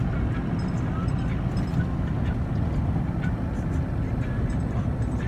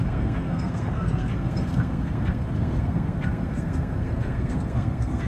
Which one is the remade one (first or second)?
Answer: second